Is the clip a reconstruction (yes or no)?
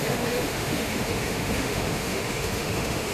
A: yes